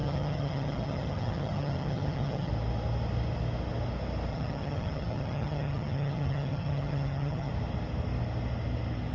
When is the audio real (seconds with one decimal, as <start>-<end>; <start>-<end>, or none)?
2.5-4.3; 7.5-9.1